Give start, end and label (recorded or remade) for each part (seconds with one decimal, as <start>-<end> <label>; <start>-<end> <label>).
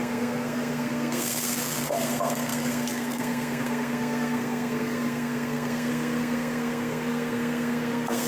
0.0-8.3 remade